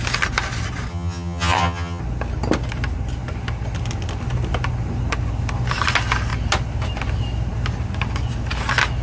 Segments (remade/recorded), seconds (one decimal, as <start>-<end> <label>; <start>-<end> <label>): 0.0-0.9 recorded; 0.9-2.0 remade; 2.0-9.0 recorded